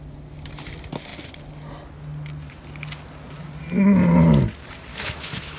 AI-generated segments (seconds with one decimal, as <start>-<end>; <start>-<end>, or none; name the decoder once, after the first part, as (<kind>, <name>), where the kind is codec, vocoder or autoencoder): 4.9-5.6 (autoencoder, DAC-VAE)